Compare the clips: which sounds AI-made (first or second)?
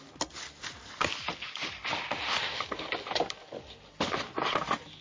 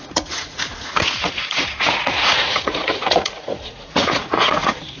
second